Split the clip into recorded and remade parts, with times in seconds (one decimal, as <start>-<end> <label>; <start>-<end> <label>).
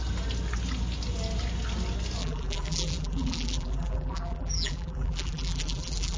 0.0-2.2 recorded; 2.2-6.2 remade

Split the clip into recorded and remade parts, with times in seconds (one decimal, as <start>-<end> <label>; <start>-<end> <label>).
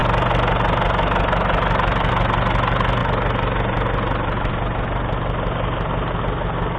0.0-6.8 recorded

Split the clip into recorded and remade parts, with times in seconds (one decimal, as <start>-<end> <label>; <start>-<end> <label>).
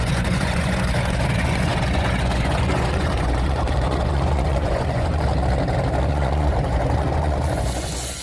0.0-5.3 remade; 5.3-6.1 recorded; 6.1-8.2 remade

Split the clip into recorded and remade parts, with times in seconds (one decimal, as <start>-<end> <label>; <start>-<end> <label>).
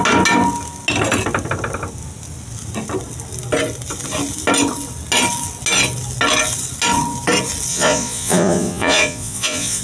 0.0-7.7 recorded; 7.7-9.8 remade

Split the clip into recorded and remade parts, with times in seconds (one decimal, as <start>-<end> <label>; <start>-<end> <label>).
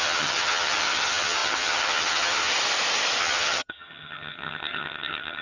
0.0-2.5 remade; 2.5-3.2 recorded; 3.2-5.4 remade